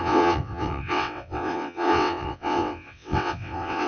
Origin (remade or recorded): remade